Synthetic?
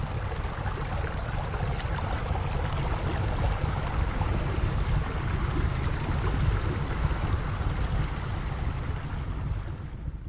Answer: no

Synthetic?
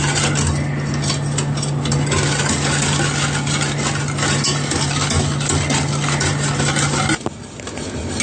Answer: no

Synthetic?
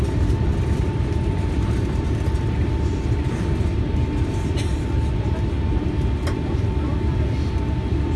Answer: no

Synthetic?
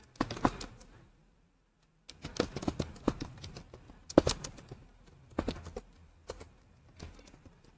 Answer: no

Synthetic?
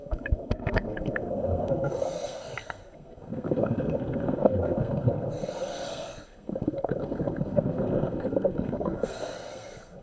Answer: yes